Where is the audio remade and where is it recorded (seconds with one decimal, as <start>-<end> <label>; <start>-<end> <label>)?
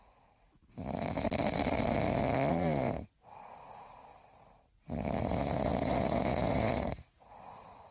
0.0-0.6 remade; 0.6-2.5 recorded; 2.5-4.1 remade; 4.1-5.2 recorded; 5.2-7.9 remade